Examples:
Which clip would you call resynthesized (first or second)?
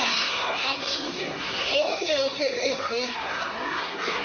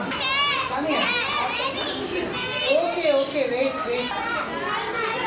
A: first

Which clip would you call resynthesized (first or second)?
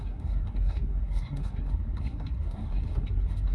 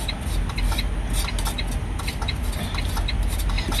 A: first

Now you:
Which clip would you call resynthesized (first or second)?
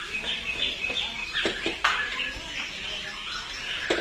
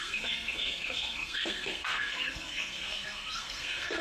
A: second